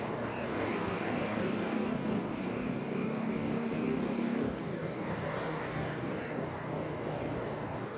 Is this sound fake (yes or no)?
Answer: yes